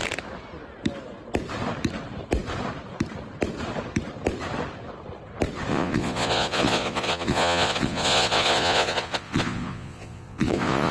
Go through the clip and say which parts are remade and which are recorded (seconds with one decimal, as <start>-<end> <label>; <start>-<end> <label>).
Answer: 0.0-5.7 recorded; 5.7-10.9 remade